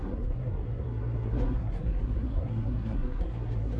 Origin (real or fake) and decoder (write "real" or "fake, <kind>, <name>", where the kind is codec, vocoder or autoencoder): fake, codec, SNAC